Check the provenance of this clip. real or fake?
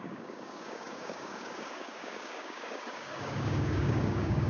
fake